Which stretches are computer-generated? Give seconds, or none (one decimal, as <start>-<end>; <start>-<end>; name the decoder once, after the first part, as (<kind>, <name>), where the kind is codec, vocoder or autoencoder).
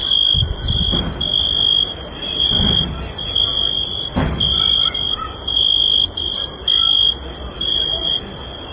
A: none